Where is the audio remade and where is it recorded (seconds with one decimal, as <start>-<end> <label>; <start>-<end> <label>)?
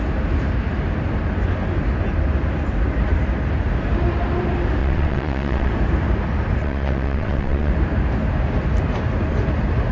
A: 0.0-4.8 recorded; 4.8-5.7 remade; 5.7-6.6 recorded; 6.6-7.7 remade; 7.7-9.9 recorded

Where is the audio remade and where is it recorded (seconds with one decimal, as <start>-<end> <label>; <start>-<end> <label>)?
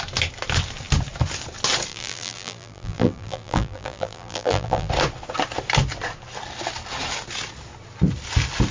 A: 0.0-1.9 recorded; 1.9-4.9 remade; 4.9-8.7 recorded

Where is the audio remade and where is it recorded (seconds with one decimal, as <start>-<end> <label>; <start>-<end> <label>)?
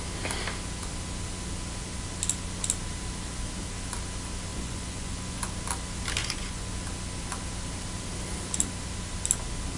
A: 0.0-4.5 recorded; 4.5-5.5 remade; 5.5-6.2 recorded; 6.2-6.7 remade; 6.7-9.8 recorded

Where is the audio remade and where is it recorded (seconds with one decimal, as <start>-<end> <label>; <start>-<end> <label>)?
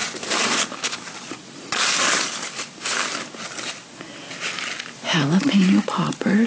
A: 0.0-6.5 recorded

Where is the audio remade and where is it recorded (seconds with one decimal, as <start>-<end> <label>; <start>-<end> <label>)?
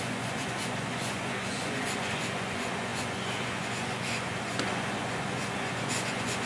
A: 0.0-6.5 remade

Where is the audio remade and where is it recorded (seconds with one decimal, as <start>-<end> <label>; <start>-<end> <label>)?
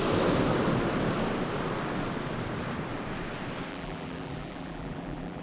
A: 0.0-3.7 recorded; 3.7-5.4 remade